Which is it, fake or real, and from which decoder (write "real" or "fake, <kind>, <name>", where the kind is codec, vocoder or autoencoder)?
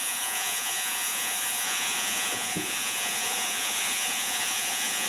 fake, vocoder, Vocos